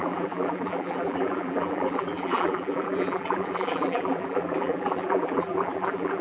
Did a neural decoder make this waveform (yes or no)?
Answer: yes